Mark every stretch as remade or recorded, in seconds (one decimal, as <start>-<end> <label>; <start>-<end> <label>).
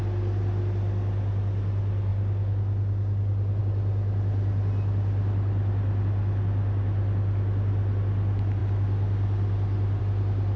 0.0-10.6 recorded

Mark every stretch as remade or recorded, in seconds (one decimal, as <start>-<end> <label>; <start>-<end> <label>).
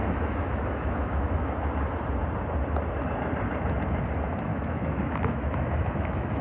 0.0-1.5 remade; 1.5-4.5 recorded; 4.5-6.4 remade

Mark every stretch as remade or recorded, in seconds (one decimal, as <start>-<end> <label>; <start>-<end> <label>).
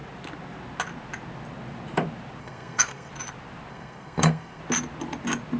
0.0-2.4 recorded; 2.4-3.1 remade; 3.1-3.7 recorded; 3.7-4.6 remade; 4.6-5.6 recorded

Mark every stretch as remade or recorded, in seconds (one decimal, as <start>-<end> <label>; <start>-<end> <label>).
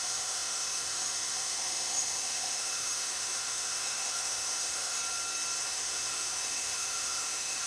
0.0-5.0 remade; 5.0-5.6 recorded; 5.6-7.7 remade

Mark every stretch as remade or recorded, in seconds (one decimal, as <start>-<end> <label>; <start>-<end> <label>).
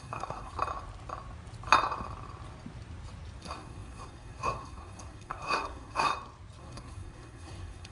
0.0-0.5 remade; 0.5-3.4 recorded; 3.4-6.1 remade; 6.1-6.6 recorded; 6.6-7.9 remade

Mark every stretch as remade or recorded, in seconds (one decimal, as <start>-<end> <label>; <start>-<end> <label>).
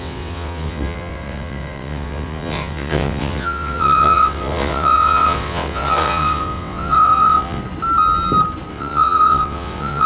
0.0-7.6 remade; 7.6-8.7 recorded; 8.7-10.1 remade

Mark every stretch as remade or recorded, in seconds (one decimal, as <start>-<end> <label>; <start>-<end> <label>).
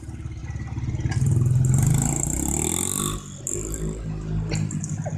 0.0-5.2 recorded